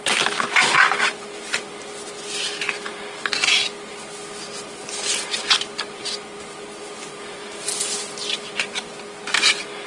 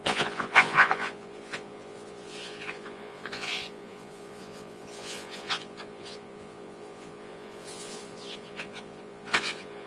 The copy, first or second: second